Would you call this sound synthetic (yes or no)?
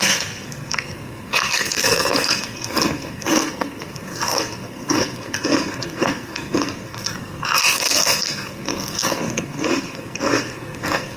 yes